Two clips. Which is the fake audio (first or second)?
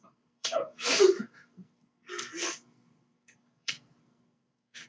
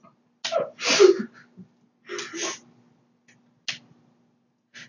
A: first